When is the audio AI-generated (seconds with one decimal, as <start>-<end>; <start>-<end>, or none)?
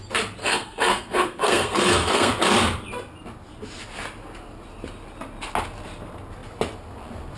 0.4-2.3